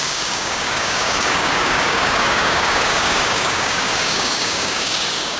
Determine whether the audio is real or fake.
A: fake